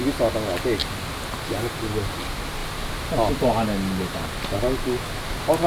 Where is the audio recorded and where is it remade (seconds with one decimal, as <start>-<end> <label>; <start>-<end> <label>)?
0.0-5.7 recorded